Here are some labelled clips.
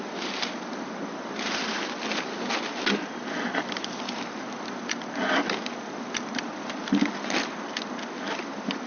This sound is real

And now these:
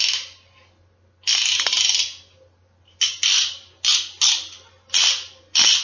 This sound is real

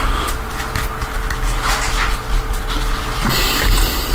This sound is real